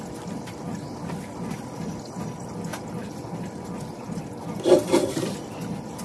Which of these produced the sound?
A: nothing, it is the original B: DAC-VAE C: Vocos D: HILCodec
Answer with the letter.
A